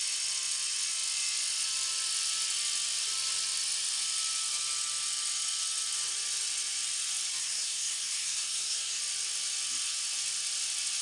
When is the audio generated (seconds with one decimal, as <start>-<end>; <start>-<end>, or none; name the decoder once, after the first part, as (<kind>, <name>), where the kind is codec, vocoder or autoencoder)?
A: 7.4-9.0 (codec, SNAC)

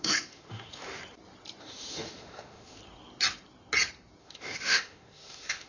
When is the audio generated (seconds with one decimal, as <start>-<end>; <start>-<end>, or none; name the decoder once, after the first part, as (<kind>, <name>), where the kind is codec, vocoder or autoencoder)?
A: 0.0-1.0 (autoencoder, DAC-VAE); 1.6-2.8; 4.2-5.7

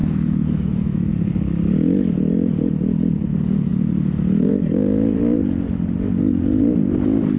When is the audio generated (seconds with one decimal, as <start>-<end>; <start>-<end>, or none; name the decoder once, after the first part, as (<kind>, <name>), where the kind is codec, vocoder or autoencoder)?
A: 0.0-1.1 (autoencoder, DAC-VAE)

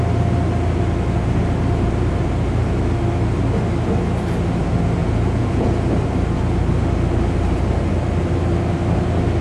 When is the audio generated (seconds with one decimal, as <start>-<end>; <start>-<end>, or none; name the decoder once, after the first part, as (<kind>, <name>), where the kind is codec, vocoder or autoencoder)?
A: 5.0-5.9 (vocoder, Vocos)

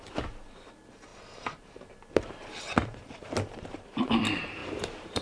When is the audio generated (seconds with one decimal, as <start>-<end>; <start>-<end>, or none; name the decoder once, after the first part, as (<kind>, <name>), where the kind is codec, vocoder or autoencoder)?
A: 4.6-5.2 (vocoder, BigVGAN v2)

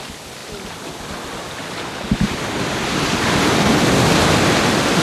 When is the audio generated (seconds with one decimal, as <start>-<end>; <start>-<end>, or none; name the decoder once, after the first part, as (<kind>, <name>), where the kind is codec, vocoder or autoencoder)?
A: none

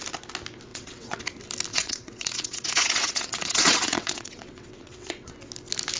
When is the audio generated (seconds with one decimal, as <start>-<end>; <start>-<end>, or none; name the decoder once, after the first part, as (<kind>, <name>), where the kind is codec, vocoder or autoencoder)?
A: 0.7-1.2 (vocoder, WaveNeXt); 1.7-5.3